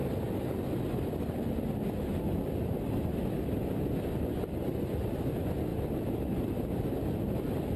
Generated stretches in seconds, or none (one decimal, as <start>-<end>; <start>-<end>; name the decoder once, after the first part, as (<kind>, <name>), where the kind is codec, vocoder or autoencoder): none